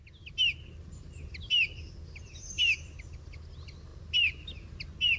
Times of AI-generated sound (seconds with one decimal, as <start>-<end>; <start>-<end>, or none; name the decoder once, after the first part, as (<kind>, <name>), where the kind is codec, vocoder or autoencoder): none